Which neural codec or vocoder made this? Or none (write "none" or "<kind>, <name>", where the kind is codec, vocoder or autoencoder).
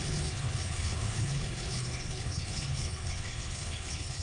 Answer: codec, HILCodec